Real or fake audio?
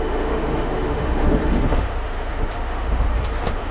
fake